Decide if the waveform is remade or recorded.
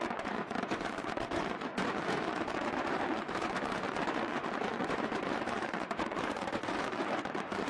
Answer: remade